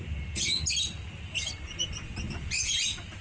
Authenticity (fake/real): real